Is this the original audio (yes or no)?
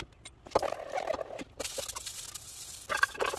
yes